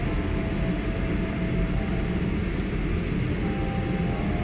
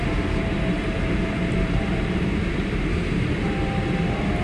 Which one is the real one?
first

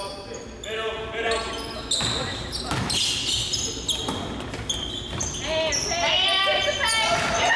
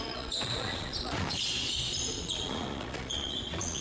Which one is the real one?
first